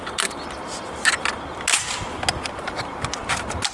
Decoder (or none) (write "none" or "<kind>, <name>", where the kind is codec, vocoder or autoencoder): none